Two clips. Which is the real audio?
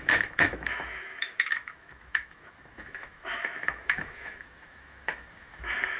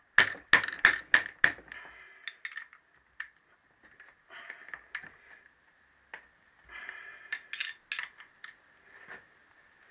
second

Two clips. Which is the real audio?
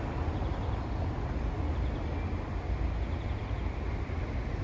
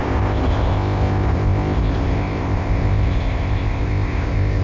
first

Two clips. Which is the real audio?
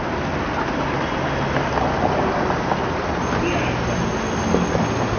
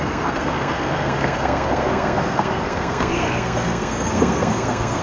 first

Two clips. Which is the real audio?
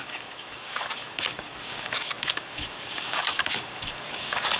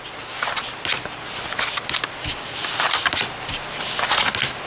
second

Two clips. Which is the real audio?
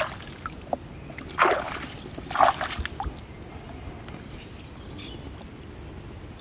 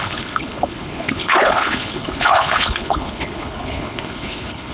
first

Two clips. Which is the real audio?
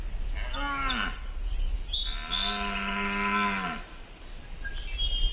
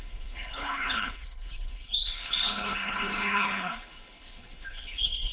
first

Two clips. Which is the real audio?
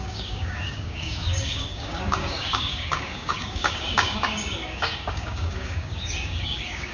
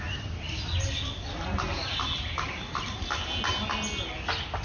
second